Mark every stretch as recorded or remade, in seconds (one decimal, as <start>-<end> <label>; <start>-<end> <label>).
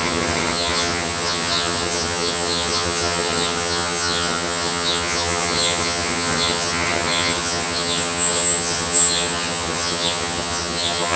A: 0.0-11.2 remade